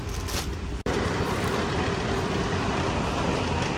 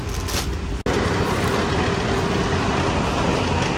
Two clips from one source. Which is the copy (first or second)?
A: first